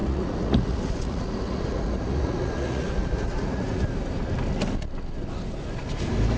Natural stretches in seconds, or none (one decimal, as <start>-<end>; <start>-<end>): 3.8-6.4